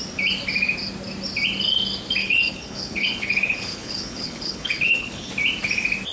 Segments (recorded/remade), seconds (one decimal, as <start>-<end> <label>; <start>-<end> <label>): 0.0-2.2 recorded; 2.2-5.3 remade; 5.3-6.1 recorded